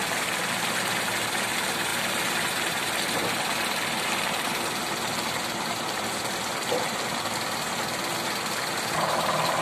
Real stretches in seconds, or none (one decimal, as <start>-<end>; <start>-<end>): 0.0-9.6